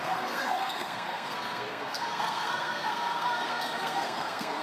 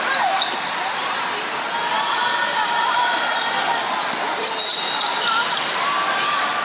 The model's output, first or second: first